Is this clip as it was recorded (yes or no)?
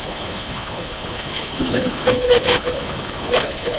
no